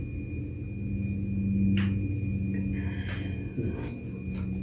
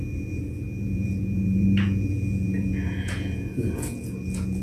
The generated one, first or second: second